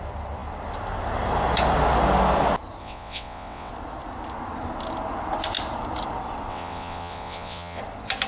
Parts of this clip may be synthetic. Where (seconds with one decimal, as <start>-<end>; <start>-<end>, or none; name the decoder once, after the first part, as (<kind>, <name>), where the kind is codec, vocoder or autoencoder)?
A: 2.8-3.7 (vocoder, WaveNeXt); 6.5-7.8